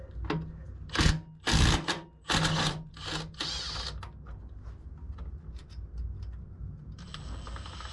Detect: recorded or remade recorded